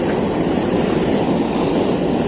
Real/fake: real